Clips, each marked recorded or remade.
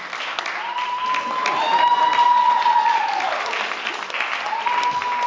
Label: recorded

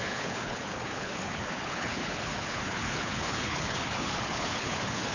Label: remade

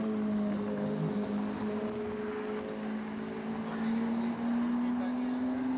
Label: recorded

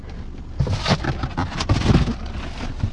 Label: recorded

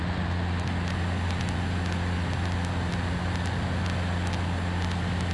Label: recorded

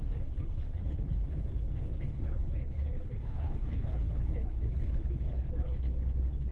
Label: remade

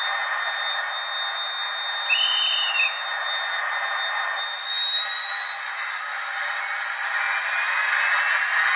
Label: recorded